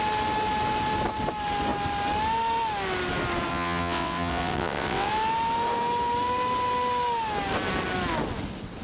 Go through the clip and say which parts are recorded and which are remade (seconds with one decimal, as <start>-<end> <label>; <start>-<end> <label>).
0.0-3.5 recorded; 3.5-5.1 remade; 5.1-8.8 recorded